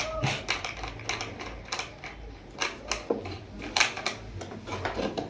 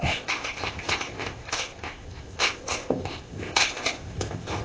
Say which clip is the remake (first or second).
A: second